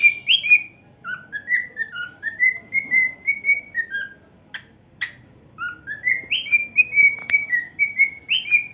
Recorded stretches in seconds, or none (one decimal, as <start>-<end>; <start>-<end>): 0.0-1.8; 2.4-7.2; 7.8-8.7